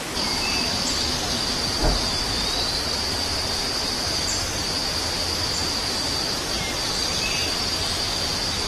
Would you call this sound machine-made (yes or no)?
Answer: yes